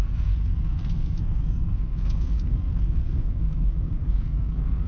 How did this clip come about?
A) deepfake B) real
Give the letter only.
A